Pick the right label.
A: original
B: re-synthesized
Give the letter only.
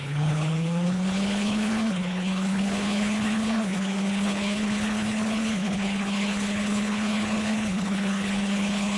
B